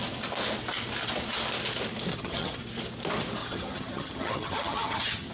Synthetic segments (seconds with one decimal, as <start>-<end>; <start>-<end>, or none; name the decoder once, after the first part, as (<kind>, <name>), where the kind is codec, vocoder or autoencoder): 2.1-2.6 (vocoder, HiFi-GAN); 3.4-5.3